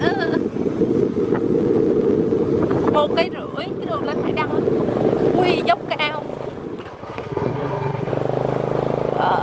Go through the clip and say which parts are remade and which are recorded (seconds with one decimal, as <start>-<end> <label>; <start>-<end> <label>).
0.0-7.0 recorded; 7.0-8.1 remade; 8.1-9.4 recorded